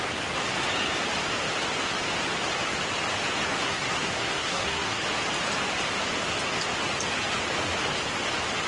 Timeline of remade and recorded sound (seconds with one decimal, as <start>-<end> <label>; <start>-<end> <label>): 0.0-3.5 recorded; 3.5-5.0 remade; 5.0-8.7 recorded